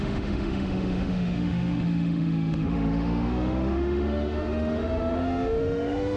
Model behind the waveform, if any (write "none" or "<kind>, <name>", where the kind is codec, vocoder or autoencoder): autoencoder, DAC-VAE